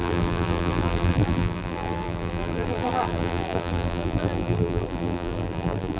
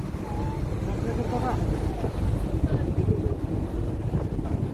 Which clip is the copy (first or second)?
first